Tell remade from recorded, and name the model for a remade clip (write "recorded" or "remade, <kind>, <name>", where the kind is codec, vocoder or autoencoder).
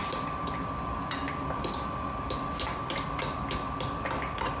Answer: recorded